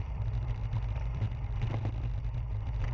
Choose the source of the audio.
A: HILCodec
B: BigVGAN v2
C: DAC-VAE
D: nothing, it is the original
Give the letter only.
B